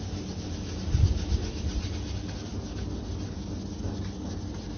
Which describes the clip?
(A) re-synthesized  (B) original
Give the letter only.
B